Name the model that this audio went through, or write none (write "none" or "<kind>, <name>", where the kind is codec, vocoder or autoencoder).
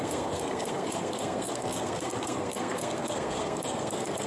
codec, SNAC